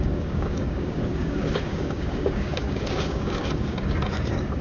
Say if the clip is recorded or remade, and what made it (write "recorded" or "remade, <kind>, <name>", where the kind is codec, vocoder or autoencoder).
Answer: remade, codec, DAC